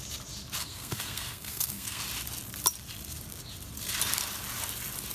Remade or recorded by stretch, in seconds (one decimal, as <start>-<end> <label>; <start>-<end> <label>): 0.0-0.6 recorded; 0.6-2.0 remade; 2.0-5.1 recorded